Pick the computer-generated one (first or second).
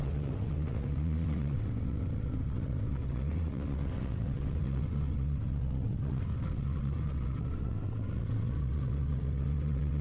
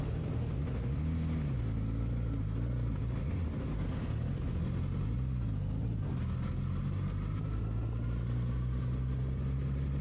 first